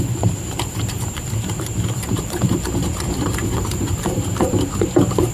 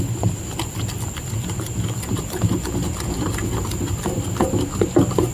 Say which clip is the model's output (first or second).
first